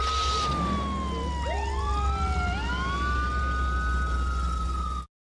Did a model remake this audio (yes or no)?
no